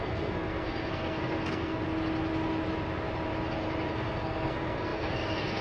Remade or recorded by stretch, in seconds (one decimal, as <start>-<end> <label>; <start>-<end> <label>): 0.0-1.8 remade; 1.8-3.9 recorded; 3.9-5.6 remade